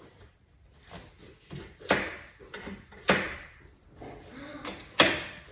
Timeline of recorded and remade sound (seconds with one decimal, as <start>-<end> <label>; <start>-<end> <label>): 0.0-5.5 recorded